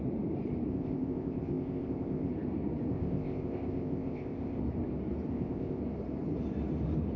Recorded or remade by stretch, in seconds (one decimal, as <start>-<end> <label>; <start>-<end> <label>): 0.0-0.7 recorded; 0.7-2.3 remade; 2.3-2.9 recorded; 2.9-4.6 remade; 4.6-5.3 recorded; 5.3-5.8 remade; 5.8-7.2 recorded